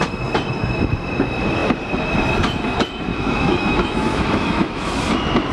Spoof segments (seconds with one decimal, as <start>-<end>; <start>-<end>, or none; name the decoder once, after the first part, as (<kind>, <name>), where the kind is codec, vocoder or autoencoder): 3.1-5.0 (autoencoder, DAC-VAE)